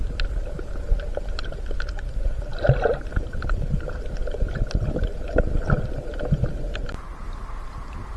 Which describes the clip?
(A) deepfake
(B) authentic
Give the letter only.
B